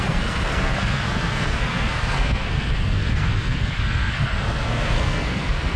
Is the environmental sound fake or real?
fake